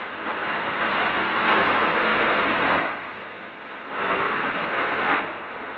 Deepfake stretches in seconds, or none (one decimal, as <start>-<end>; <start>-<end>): 0.0-5.8

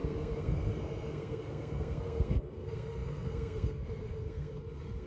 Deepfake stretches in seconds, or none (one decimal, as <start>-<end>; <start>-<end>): 0.0-5.1

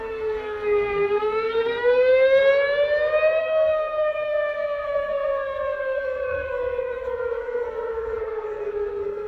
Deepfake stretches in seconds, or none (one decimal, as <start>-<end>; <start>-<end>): 0.0-2.4; 3.4-9.3

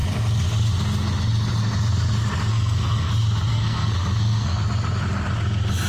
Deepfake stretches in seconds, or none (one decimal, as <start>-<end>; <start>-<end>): 2.5-3.1; 3.5-4.6

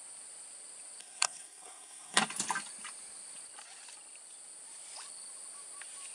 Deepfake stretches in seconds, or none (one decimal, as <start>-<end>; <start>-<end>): 1.0-2.2

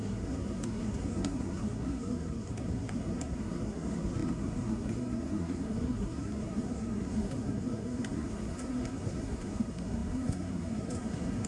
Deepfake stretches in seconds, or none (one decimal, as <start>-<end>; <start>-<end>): 0.0-11.5

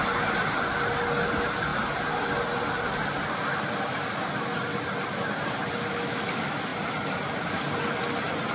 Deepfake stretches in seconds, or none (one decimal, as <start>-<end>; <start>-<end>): none